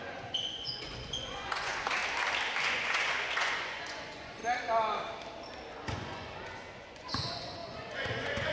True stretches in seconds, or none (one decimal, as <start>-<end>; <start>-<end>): 2.0-2.6; 4.4-5.7